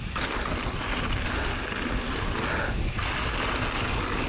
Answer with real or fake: real